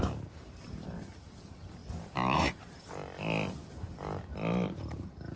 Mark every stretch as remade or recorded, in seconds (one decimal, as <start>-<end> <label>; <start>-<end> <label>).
0.0-5.4 recorded

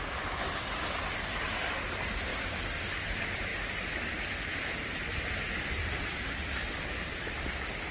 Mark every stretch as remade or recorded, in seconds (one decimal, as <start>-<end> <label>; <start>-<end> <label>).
0.0-7.9 recorded